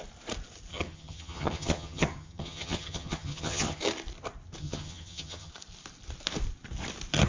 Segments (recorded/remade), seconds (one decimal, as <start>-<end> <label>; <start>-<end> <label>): 0.0-0.7 recorded; 0.7-3.8 remade; 3.8-4.6 recorded; 4.6-5.5 remade; 5.5-7.3 recorded

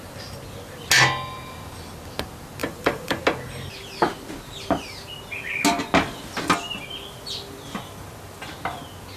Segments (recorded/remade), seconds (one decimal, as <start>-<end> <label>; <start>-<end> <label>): 0.0-2.6 recorded; 2.6-3.2 remade; 3.2-9.2 recorded

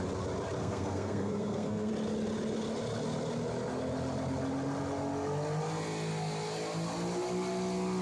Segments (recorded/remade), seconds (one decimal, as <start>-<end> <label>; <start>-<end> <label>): 0.0-0.6 recorded; 0.6-1.9 remade; 1.9-8.0 recorded

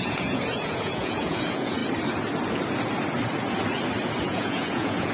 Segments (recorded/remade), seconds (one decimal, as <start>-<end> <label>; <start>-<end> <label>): 0.0-1.8 remade; 1.8-4.2 recorded; 4.2-5.1 remade

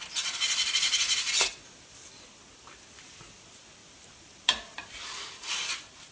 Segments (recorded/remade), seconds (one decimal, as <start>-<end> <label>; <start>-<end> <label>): 0.0-6.1 recorded

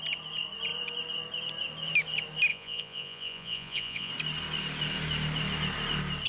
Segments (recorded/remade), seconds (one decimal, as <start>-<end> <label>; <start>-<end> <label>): 0.0-2.5 recorded; 2.5-4.1 remade; 4.1-6.3 recorded

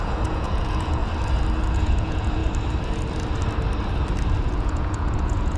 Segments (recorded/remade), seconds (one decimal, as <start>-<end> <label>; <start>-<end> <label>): 0.0-1.0 remade; 1.0-1.7 recorded; 1.7-2.4 remade; 2.4-4.5 recorded; 4.5-5.6 remade

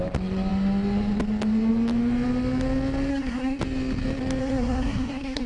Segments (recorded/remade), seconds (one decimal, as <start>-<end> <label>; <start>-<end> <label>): 0.0-3.1 recorded; 3.1-3.6 remade; 3.6-4.4 recorded; 4.4-5.5 remade